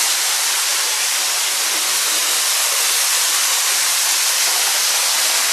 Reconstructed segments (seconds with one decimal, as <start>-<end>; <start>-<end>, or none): 0.7-1.2